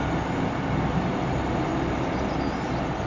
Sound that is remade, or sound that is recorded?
recorded